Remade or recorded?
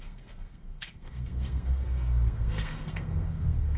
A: remade